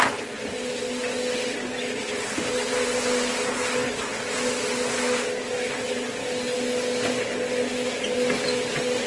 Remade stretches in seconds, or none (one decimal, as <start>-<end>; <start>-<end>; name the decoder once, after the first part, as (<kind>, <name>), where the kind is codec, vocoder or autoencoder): none